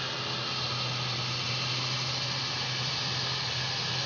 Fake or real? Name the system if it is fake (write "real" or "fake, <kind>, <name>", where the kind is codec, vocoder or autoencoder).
real